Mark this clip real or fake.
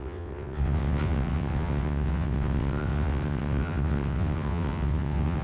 fake